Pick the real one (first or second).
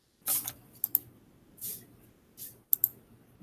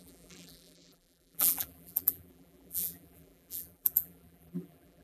first